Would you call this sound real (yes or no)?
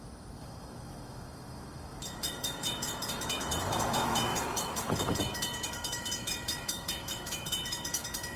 no